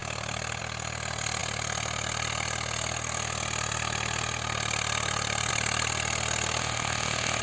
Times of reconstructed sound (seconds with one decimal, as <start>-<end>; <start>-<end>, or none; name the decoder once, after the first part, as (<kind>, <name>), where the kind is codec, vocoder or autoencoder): 6.6-7.4 (autoencoder, DAC-VAE)